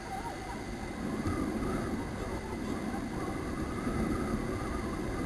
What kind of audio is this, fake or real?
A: real